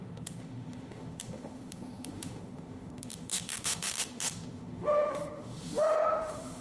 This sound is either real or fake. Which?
fake